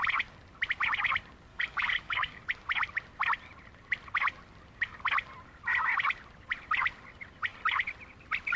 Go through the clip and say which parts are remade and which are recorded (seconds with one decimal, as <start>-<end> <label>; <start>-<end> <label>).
0.0-1.5 recorded; 1.5-2.4 remade; 2.4-8.6 recorded